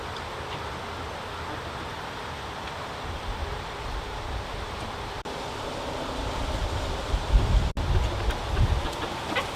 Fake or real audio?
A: real